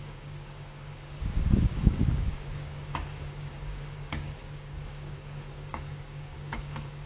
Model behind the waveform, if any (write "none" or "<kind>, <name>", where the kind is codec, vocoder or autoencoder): codec, DAC